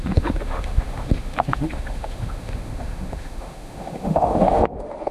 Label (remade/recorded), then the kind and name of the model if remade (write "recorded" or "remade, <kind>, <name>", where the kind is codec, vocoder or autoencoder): remade, autoencoder, DAC-VAE